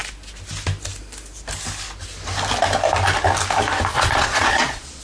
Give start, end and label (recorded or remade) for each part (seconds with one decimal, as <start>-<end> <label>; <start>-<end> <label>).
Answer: 0.0-3.9 recorded; 3.9-5.0 remade